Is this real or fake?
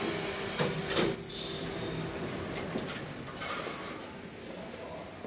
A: real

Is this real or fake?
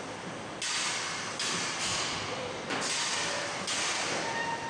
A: real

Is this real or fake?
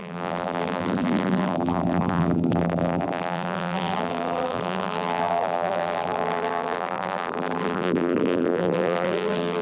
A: fake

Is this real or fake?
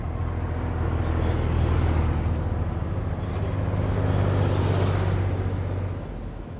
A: real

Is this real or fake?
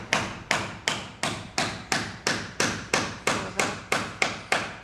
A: real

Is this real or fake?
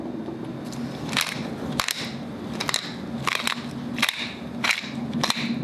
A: real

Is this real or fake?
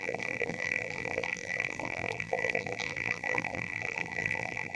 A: fake